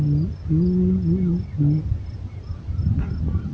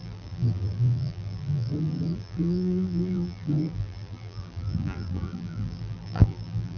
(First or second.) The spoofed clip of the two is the second